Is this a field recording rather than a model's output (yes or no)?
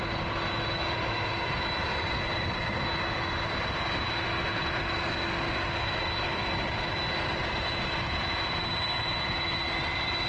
yes